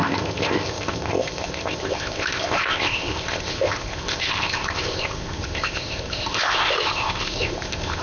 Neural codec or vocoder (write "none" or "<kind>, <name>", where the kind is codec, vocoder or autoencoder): codec, ZipCodec